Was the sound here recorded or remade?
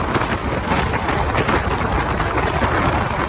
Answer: recorded